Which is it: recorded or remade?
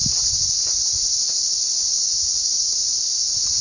recorded